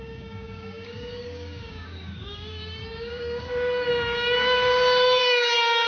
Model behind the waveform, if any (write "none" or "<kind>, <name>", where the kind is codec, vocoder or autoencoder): codec, DAC